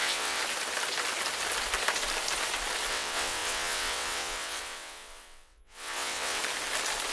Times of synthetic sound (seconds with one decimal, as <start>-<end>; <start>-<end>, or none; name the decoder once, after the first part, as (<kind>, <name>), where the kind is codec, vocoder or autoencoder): 0.0-0.4 (vocoder, WaveNeXt); 2.9-6.4

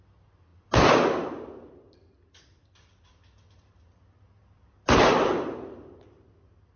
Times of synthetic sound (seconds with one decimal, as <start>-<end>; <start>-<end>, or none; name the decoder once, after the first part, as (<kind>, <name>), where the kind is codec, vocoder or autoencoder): none

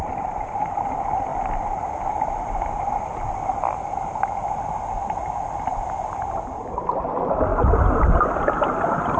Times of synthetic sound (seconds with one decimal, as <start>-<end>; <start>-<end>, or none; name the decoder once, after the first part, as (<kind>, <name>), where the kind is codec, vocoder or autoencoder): none

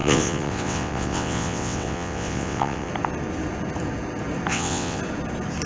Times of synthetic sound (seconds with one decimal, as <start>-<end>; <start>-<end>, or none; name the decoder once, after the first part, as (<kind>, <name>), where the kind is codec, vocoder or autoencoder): 0.0-2.9 (vocoder, WaveNeXt); 4.5-5.0

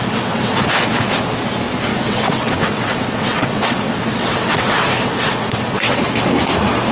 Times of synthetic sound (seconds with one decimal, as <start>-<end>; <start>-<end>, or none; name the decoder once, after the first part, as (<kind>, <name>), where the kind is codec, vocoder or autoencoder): 0.0-0.6 (vocoder, WaveNeXt); 1.9-6.0

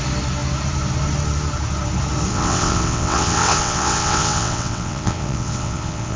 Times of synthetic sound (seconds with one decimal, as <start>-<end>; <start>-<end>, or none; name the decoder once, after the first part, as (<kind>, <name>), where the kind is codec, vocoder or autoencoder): 2.3-6.2 (vocoder, WaveNeXt)

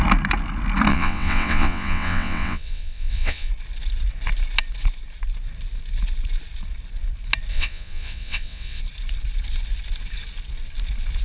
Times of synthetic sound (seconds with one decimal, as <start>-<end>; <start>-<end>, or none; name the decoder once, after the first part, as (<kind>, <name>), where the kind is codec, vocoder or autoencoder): 0.9-3.5 (vocoder, WaveNeXt); 7.5-8.8

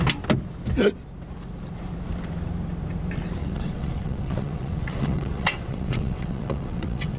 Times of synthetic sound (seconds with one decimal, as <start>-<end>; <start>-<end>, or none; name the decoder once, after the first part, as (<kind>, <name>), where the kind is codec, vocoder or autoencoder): 3.4-7.2 (vocoder, WaveNeXt)